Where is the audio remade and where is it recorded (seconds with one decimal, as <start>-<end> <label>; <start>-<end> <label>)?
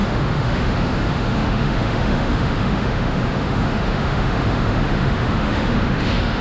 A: 0.0-6.4 remade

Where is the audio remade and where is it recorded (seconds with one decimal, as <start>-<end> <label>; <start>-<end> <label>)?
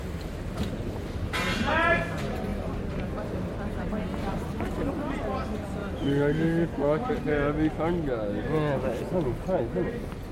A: 0.0-5.8 recorded; 5.8-7.1 remade; 7.1-10.3 recorded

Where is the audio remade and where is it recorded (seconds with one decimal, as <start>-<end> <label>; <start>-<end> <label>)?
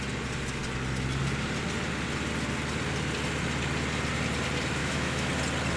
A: 0.0-4.8 recorded; 4.8-5.3 remade; 5.3-5.8 recorded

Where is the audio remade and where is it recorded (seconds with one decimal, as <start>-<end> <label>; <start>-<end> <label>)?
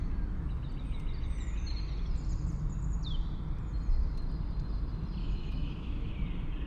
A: 0.0-5.2 recorded; 5.2-6.1 remade; 6.1-6.7 recorded